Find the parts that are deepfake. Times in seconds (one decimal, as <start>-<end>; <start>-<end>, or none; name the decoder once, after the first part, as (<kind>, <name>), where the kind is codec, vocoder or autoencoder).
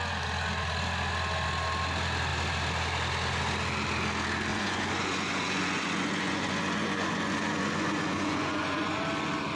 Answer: 4.5-9.0 (vocoder, Vocos)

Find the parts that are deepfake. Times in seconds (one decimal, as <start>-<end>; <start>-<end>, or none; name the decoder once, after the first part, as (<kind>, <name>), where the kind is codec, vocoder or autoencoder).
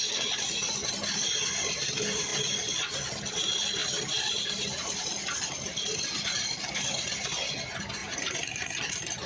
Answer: 3.8-5.1 (vocoder, BigVGAN v2); 8.0-9.3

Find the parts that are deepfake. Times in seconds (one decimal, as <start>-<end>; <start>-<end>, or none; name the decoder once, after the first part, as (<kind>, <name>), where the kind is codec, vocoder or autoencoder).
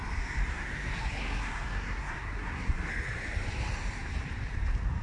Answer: 0.5-2.9 (codec, SNAC)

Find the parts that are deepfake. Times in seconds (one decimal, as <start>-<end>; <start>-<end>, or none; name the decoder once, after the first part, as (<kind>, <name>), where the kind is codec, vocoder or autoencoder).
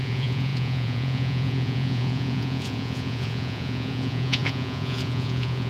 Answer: 0.0-5.7 (vocoder, Vocos)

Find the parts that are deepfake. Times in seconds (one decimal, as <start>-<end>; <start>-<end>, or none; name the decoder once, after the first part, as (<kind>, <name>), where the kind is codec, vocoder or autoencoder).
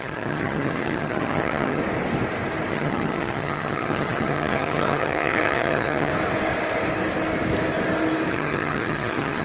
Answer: 0.0-1.8 (vocoder, HiFi-GAN); 2.7-6.1; 8.3-9.4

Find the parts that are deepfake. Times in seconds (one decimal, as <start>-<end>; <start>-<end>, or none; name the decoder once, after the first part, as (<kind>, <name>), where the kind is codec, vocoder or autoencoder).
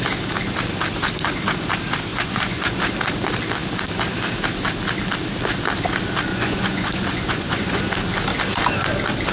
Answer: 2.1-2.8 (vocoder, Vocos); 6.3-7.8